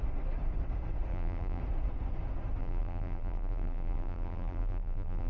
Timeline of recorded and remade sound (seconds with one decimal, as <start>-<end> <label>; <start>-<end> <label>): 0.0-1.1 recorded; 1.1-1.6 remade; 1.6-2.6 recorded; 2.6-5.3 remade